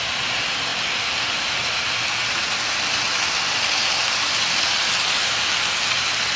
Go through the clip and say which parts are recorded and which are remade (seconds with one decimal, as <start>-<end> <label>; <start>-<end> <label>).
0.0-6.4 recorded